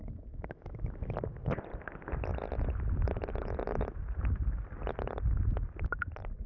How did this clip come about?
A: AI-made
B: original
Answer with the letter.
B